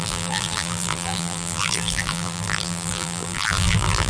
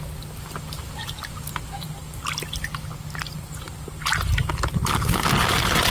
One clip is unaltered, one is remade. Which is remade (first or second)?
first